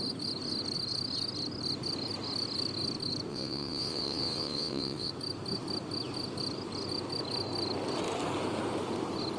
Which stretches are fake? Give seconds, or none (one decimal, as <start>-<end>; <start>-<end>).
3.3-5.1